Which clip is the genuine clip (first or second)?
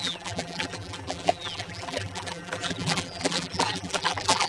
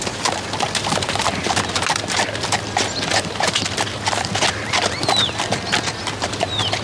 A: second